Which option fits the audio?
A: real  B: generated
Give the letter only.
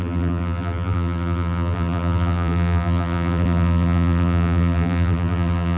B